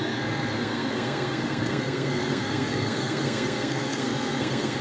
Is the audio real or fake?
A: fake